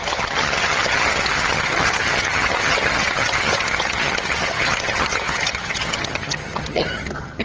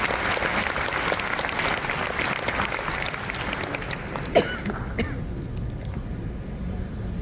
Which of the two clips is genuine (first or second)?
second